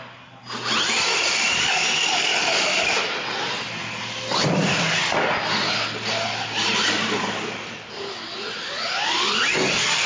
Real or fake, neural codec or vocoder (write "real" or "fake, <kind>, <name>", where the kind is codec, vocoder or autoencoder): real